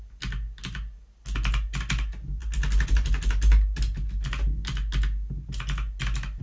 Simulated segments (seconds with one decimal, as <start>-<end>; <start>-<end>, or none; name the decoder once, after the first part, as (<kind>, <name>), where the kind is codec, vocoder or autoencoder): none